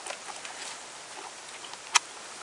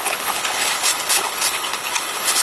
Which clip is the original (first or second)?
first